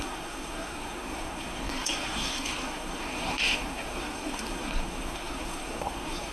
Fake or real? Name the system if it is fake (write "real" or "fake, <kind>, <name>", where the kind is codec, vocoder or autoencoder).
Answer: fake, codec, SNAC